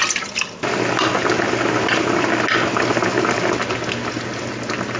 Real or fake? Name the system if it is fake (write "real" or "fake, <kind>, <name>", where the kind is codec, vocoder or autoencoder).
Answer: real